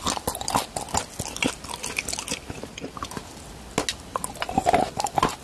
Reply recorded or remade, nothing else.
recorded